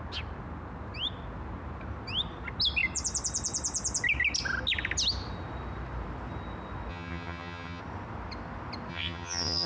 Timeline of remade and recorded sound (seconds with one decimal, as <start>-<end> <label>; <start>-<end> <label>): 0.0-6.9 recorded; 6.9-7.8 remade; 7.8-8.9 recorded; 8.9-9.7 remade